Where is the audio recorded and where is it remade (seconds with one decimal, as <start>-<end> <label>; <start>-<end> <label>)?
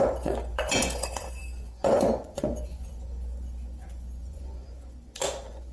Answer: 0.0-5.7 remade